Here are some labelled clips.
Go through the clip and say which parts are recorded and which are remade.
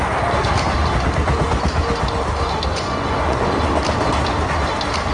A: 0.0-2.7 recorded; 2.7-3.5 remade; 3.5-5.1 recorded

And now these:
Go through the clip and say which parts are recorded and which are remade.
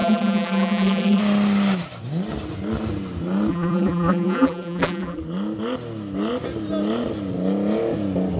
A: 0.0-1.2 remade; 1.2-3.5 recorded; 3.5-5.2 remade; 5.2-8.4 recorded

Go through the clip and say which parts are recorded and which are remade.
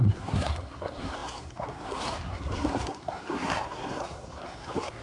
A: 0.0-5.0 remade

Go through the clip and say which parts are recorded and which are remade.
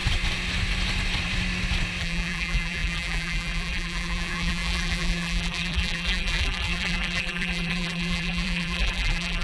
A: 0.0-2.0 recorded; 2.0-9.4 remade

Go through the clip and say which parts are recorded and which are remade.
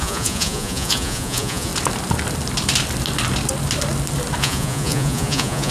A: 0.0-1.7 remade; 1.7-4.4 recorded; 4.4-5.7 remade